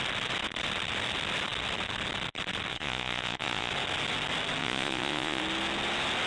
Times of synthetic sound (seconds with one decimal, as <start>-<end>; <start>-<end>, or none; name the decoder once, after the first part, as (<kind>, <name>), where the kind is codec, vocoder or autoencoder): 2.7-3.7 (vocoder, Vocos); 4.6-5.4